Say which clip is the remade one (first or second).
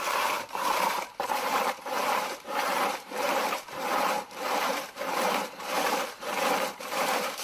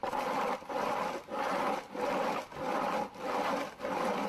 first